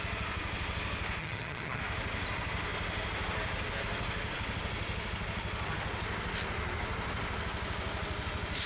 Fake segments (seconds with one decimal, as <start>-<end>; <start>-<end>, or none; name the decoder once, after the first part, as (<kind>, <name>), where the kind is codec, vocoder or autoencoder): 1.2-1.8 (vocoder, HiFi-GAN)